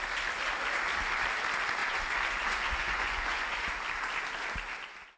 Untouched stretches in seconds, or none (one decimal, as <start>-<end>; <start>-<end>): 0.0-1.8; 3.7-5.2